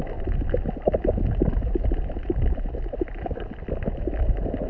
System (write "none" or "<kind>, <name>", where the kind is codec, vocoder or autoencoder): none